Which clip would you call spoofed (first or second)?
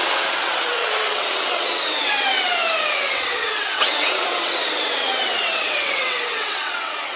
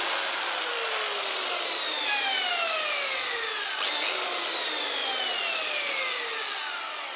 first